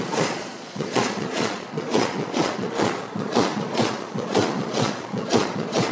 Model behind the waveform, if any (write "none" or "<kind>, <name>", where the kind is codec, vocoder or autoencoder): vocoder, Vocos